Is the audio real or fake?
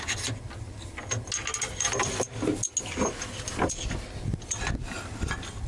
real